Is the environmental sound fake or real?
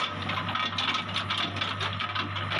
real